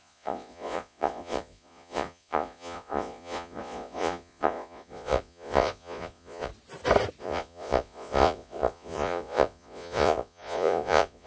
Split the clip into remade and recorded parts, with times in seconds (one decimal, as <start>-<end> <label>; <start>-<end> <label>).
0.0-6.5 remade; 6.5-7.2 recorded; 7.2-11.3 remade